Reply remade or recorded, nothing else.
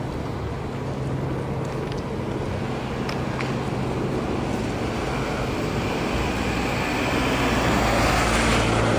recorded